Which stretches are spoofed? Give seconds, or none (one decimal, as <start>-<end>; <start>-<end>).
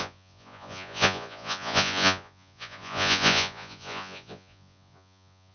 0.0-5.5